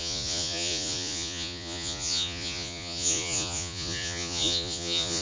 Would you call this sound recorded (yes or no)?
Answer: no